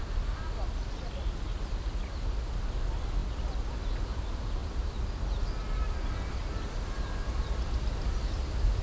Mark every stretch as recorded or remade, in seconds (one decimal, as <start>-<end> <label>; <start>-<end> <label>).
0.0-3.2 recorded; 3.2-3.8 remade; 3.8-6.4 recorded; 6.4-7.5 remade; 7.5-8.8 recorded